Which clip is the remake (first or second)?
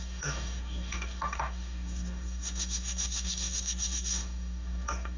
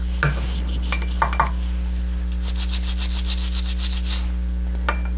first